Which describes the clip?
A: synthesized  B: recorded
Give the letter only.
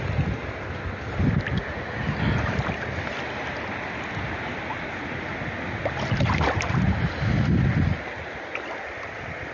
B